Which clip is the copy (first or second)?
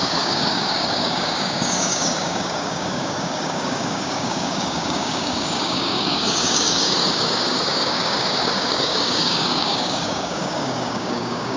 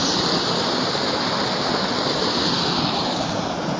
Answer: first